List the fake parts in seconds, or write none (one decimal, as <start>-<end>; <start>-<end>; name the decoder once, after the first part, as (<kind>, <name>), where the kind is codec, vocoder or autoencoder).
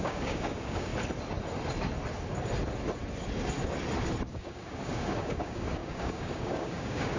0.0-0.9 (codec, DAC); 4.3-7.2